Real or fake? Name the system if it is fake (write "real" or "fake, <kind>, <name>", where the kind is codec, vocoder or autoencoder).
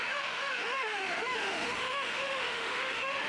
fake, autoencoder, DAC-VAE